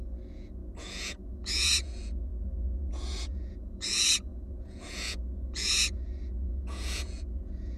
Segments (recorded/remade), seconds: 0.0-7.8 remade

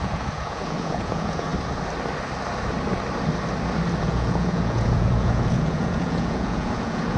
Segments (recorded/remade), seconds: 0.0-1.5 remade; 1.5-4.0 recorded; 4.0-7.2 remade

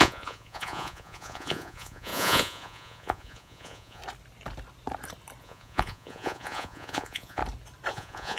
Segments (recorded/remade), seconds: 0.0-4.0 remade; 4.0-5.4 recorded; 5.4-7.4 remade; 7.4-7.9 recorded; 7.9-8.4 remade

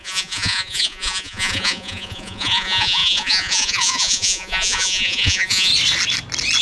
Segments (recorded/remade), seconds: 0.0-5.7 remade; 5.7-6.6 recorded

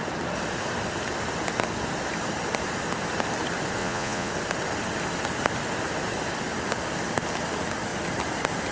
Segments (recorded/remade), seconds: 0.0-3.8 recorded; 3.8-4.3 remade; 4.3-8.7 recorded